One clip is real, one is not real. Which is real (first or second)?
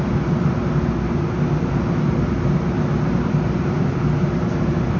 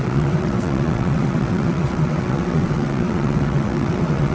first